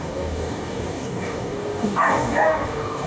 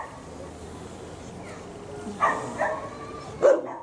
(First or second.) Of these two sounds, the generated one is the first